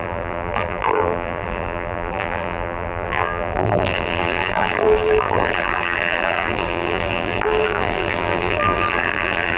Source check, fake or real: fake